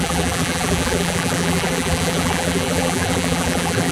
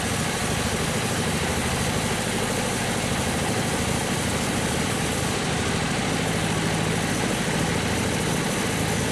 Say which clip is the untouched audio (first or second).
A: second